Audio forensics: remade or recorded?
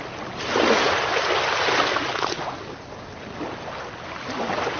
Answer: recorded